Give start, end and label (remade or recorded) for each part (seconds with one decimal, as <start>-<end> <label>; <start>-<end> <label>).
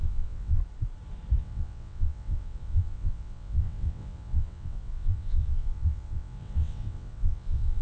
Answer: 0.0-0.6 remade; 0.6-1.4 recorded; 1.4-7.8 remade